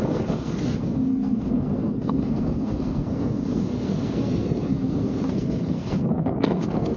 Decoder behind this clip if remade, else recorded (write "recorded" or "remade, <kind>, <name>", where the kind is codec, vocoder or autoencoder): remade, codec, SNAC